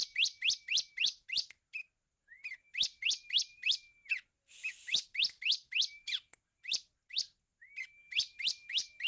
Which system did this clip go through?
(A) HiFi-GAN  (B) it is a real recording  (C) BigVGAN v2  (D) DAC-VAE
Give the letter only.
B